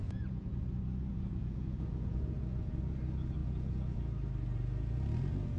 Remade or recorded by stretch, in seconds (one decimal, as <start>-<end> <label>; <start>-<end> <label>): 0.0-0.6 remade; 0.6-1.1 recorded; 1.1-2.8 remade; 2.8-3.4 recorded; 3.4-4.0 remade; 4.0-5.6 recorded